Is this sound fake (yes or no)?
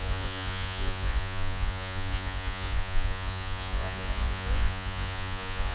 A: yes